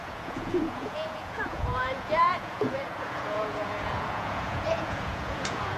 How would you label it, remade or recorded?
remade